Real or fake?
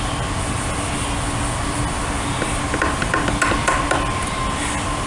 real